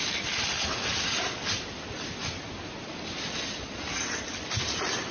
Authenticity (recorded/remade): recorded